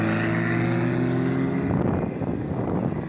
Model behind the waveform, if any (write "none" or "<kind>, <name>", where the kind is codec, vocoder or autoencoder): none